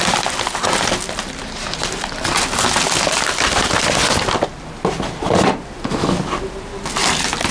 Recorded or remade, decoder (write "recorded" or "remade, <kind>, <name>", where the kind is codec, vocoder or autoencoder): recorded